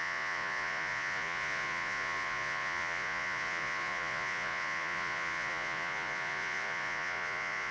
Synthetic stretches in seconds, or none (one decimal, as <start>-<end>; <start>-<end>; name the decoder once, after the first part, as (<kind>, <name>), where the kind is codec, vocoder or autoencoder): 0.0-7.7 (vocoder, Vocos)